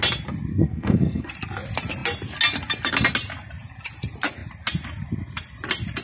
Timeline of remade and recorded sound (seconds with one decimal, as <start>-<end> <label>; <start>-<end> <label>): 0.0-0.5 recorded; 0.5-1.3 remade; 1.3-6.0 recorded